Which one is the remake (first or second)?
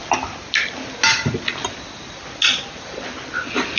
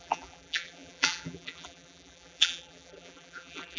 second